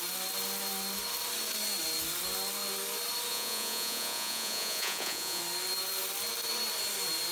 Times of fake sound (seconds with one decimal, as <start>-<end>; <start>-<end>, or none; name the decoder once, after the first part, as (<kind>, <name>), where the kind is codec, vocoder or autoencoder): 3.3-5.4 (vocoder, Vocos)